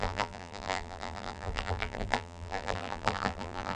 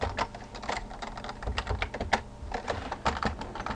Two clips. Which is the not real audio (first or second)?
first